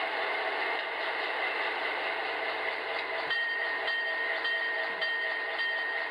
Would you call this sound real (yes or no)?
no